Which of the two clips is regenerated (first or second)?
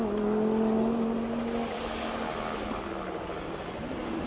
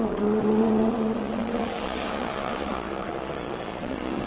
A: second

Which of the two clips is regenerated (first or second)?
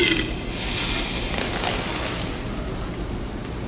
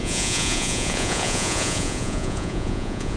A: second